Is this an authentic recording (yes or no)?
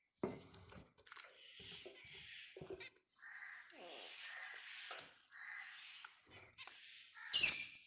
yes